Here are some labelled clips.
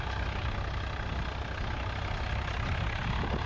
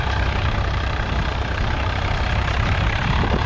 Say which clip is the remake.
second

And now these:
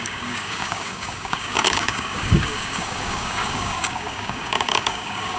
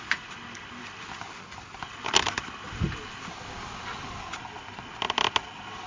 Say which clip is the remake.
first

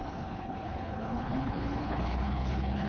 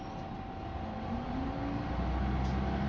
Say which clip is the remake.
first